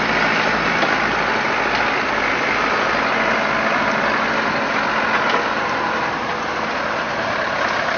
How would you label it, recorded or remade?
recorded